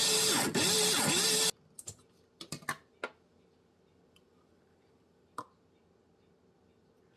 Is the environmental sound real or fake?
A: real